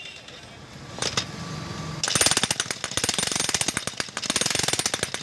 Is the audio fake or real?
real